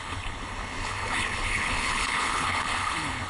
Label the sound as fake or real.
fake